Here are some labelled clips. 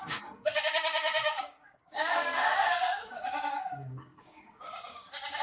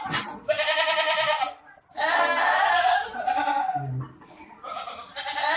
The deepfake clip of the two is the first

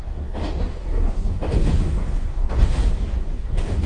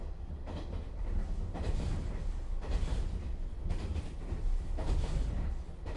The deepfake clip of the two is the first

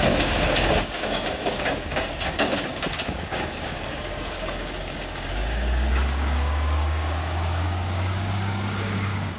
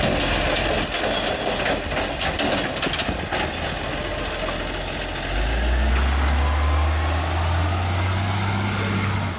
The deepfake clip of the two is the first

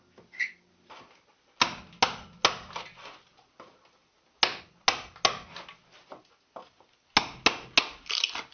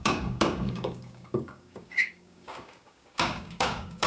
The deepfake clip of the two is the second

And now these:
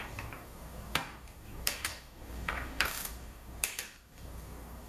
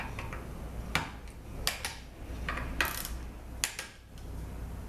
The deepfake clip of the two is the first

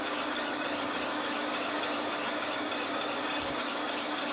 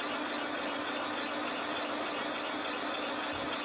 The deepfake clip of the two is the first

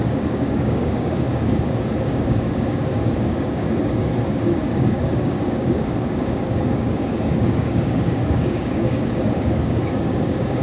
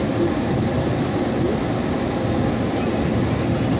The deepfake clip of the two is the first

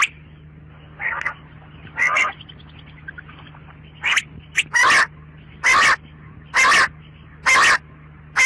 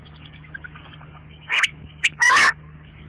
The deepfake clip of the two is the second